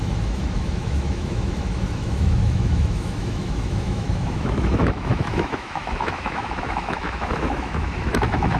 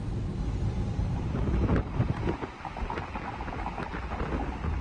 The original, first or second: second